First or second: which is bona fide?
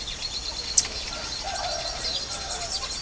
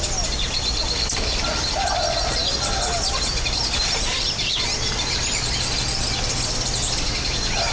first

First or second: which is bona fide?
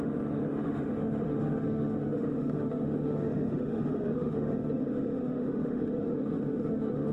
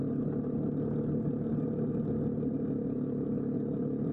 second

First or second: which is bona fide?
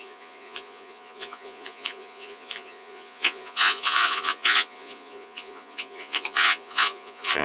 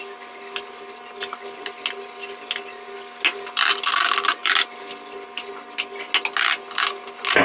second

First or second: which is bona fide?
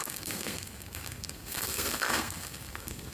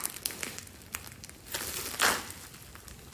second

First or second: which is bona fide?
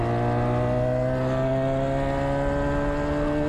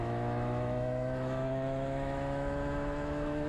first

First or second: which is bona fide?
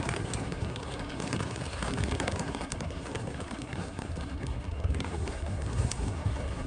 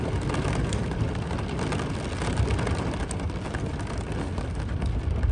second